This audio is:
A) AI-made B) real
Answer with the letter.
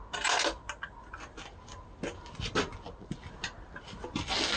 B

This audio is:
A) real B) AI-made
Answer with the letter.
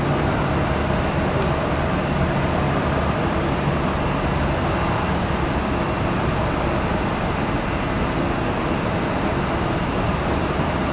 A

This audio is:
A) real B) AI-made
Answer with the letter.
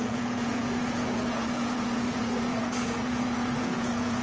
B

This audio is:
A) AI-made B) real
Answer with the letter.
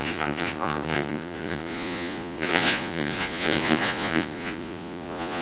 A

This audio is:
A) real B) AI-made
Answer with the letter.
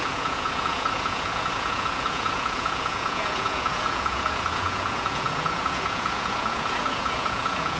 B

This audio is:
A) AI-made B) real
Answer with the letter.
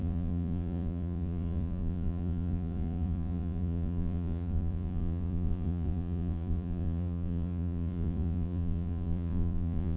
A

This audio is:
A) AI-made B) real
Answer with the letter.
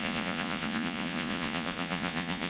A